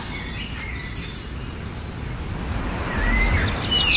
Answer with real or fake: real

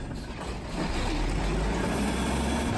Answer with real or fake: real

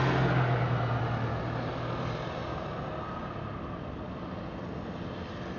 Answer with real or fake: real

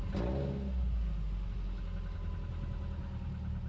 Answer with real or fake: real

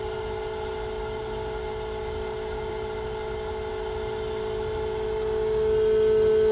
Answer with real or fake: real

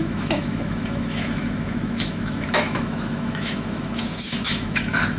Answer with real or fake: fake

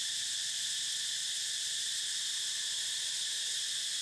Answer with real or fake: real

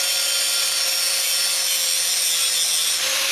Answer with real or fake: real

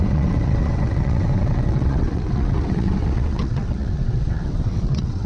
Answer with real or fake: fake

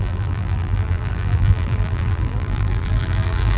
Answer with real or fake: fake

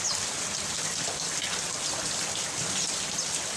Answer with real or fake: real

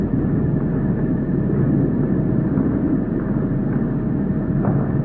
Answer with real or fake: real